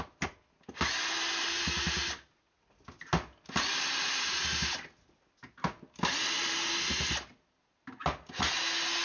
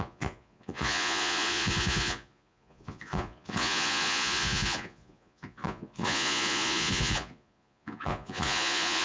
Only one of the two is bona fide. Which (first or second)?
first